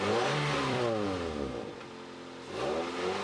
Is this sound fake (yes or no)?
yes